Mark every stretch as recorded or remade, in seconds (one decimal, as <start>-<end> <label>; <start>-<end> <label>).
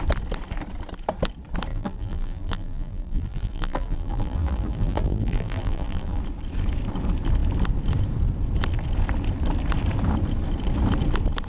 0.0-1.7 recorded; 1.7-6.2 remade; 6.2-11.5 recorded